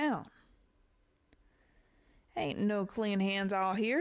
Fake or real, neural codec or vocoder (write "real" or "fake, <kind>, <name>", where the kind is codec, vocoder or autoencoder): real